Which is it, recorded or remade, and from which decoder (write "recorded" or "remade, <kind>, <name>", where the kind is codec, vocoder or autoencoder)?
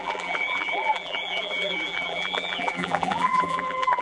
remade, vocoder, BigVGAN v2